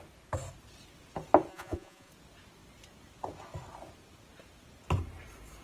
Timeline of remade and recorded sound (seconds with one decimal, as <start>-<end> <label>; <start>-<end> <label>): 0.0-1.5 recorded; 1.5-2.1 remade; 2.1-5.6 recorded